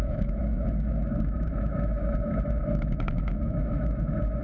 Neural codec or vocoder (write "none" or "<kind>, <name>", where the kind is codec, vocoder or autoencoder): autoencoder, DAC-VAE